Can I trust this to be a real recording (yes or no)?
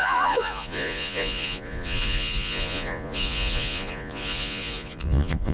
no